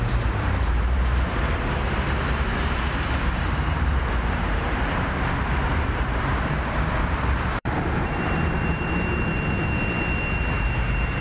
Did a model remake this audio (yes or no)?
yes